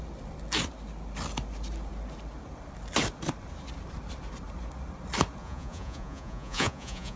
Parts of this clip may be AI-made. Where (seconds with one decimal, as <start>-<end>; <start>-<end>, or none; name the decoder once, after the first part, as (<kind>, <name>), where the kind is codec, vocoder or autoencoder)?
5.4-7.2 (vocoder, Vocos)